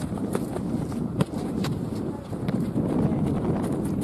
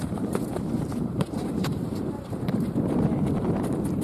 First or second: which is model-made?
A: second